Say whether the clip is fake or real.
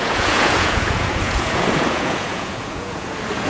fake